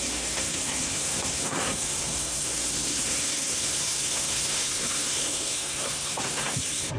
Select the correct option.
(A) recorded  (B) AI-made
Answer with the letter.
B